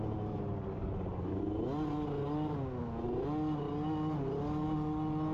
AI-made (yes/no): no